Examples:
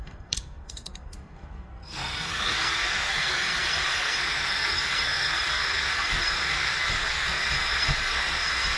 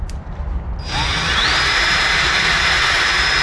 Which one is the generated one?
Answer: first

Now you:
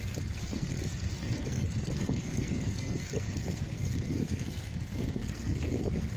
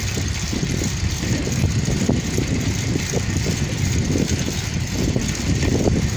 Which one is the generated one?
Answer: first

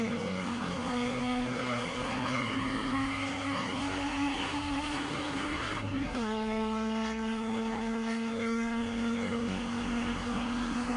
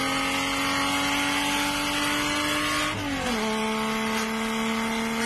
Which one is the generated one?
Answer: first